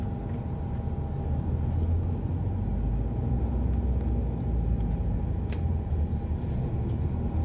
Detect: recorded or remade recorded